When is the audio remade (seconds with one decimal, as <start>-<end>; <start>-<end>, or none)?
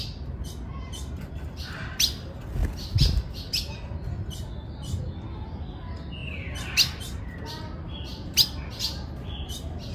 none